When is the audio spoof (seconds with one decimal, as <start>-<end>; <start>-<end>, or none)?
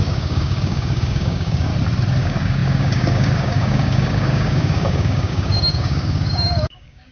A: 0.0-1.7; 2.2-7.1